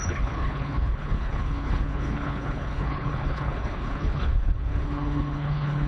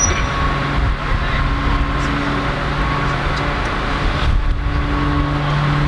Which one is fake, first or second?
first